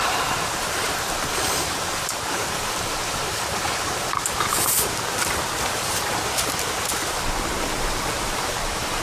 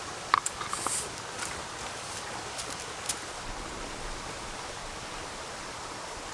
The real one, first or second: second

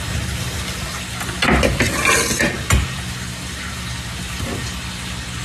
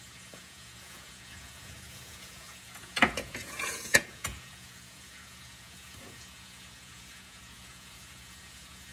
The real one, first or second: first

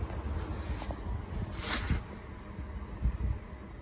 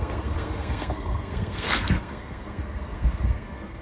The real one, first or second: first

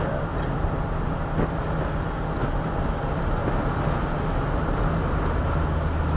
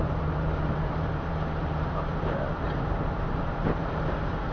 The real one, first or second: first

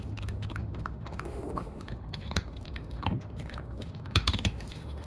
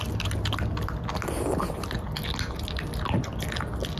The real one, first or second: second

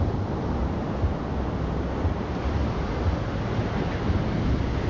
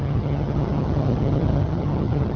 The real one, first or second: first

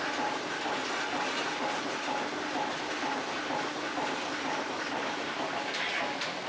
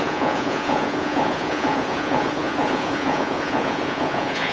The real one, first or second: first